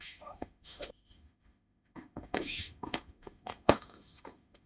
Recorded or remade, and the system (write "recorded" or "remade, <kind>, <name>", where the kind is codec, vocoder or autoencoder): remade, autoencoder, DAC-VAE